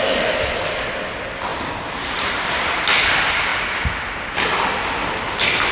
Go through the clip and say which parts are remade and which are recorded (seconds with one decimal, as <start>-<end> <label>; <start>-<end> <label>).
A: 0.0-5.7 recorded